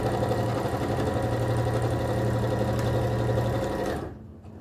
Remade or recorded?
recorded